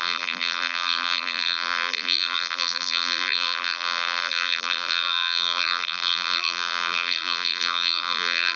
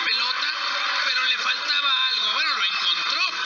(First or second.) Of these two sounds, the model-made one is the first